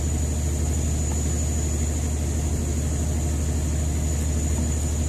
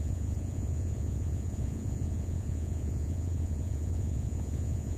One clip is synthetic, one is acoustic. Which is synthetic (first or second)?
second